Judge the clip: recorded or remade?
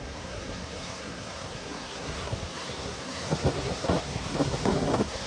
remade